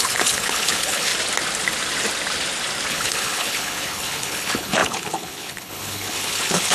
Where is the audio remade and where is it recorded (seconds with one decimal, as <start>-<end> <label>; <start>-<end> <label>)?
0.0-1.1 remade; 1.1-2.9 recorded; 2.9-6.7 remade